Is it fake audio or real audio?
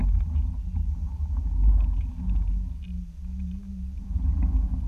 real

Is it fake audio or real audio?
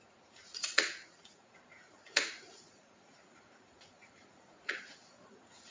fake